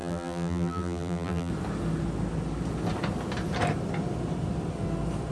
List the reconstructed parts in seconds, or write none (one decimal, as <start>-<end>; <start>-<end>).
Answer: 0.0-1.5